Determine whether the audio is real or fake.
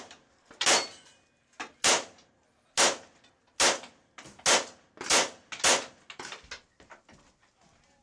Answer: real